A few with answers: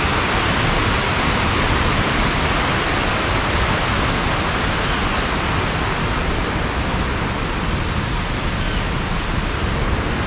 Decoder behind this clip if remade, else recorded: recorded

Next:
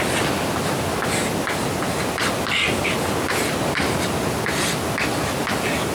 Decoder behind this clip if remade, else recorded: recorded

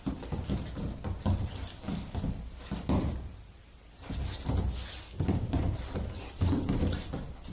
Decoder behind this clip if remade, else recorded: recorded